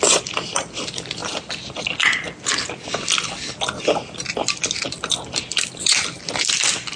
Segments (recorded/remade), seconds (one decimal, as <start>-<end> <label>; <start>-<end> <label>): 0.0-7.0 recorded